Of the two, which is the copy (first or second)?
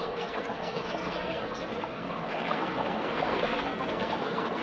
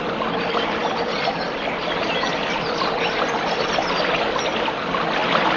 first